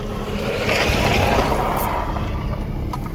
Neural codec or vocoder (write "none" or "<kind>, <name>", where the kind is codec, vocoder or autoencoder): none